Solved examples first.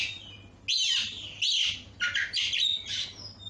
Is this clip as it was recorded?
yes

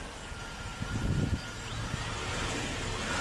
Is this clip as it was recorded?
yes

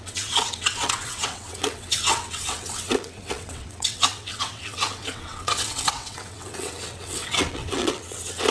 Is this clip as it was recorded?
no